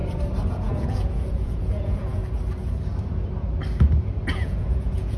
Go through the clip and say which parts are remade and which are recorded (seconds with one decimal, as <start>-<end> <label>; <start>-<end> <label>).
0.0-0.5 recorded; 0.5-2.2 remade; 2.2-4.3 recorded; 4.3-5.2 remade